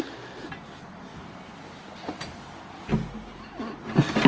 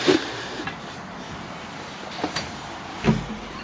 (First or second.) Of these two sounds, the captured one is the first